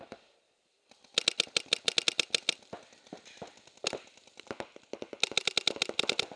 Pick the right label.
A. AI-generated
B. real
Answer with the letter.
B